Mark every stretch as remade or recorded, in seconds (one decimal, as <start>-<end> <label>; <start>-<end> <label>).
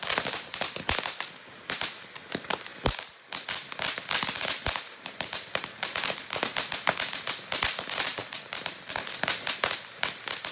0.0-10.5 remade